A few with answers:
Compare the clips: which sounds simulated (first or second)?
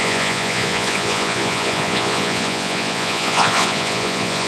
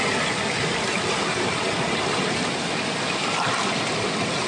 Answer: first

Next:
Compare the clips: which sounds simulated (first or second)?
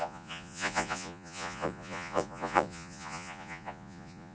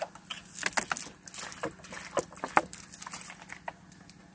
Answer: first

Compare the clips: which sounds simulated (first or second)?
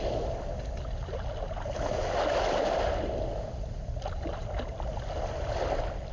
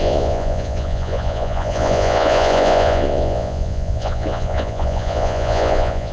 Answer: second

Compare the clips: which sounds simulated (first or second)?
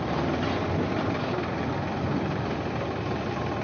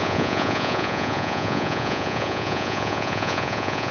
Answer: second